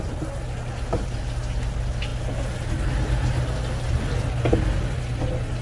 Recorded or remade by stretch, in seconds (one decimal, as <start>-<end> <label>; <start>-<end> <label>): 0.0-5.6 recorded